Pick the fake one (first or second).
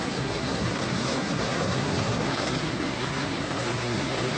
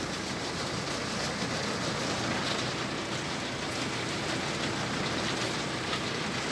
first